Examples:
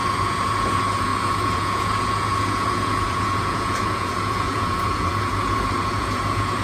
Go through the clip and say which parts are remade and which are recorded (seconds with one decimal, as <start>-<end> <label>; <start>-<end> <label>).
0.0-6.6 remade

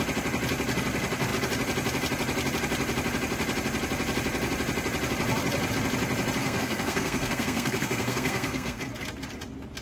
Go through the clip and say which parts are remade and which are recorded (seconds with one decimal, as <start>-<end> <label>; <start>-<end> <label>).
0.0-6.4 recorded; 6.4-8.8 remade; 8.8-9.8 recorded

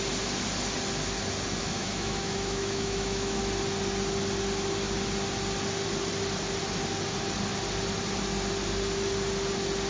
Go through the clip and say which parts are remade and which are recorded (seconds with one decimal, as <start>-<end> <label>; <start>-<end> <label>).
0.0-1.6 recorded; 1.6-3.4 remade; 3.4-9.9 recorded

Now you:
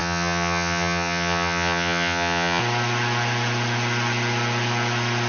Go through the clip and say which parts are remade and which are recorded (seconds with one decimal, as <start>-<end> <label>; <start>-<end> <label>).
0.0-2.6 remade; 2.6-5.3 recorded